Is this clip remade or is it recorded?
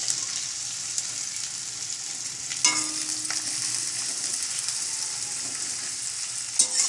recorded